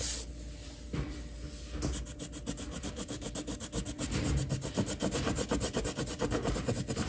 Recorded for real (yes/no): yes